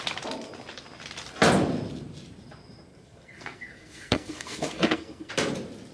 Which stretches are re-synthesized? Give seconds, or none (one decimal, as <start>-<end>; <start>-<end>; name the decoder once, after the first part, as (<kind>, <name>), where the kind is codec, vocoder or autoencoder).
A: 2.9-5.3 (codec, SNAC)